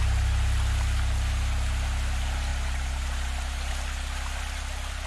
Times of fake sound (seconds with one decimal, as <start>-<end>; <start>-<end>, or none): 2.5-3.7